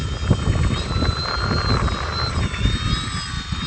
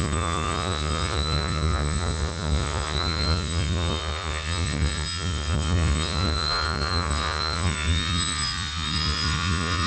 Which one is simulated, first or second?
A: second